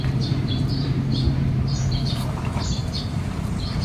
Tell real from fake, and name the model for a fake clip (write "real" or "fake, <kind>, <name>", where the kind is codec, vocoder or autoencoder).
fake, vocoder, BigVGAN v2